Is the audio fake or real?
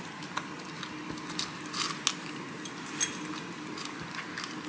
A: real